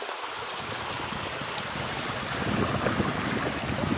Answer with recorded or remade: recorded